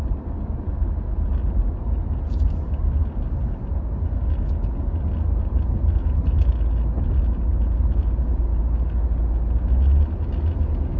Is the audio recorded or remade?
recorded